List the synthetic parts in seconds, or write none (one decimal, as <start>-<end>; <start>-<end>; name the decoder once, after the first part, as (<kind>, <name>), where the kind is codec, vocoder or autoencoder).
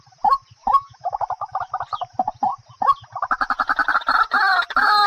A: 0.6-1.6 (autoencoder, DAC-VAE)